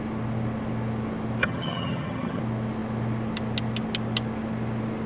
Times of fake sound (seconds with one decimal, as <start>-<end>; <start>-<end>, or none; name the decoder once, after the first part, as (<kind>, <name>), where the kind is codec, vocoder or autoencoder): 1.4-2.4 (vocoder, HiFi-GAN)